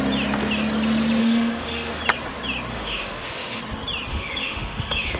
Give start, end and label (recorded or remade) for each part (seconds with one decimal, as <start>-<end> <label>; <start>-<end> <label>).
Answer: 0.0-1.2 recorded; 1.2-2.0 remade; 2.0-2.7 recorded; 2.7-3.6 remade; 3.6-4.1 recorded; 4.1-5.2 remade